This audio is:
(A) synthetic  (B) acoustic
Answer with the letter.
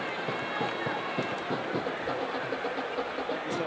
B